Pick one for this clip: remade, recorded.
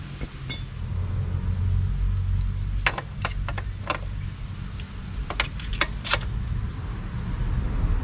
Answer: recorded